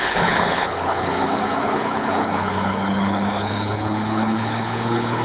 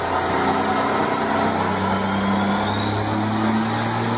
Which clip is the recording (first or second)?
second